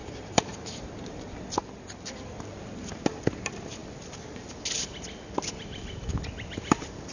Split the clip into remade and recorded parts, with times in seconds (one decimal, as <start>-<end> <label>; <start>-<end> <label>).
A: 0.0-1.2 remade; 1.2-1.6 recorded; 1.6-2.1 remade; 2.1-7.1 recorded